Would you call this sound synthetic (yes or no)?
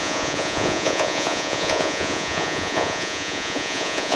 yes